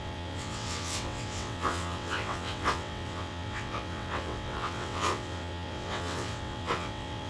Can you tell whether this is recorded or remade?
remade